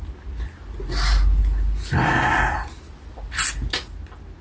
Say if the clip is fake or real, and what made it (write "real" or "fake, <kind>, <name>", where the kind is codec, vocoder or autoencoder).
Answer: real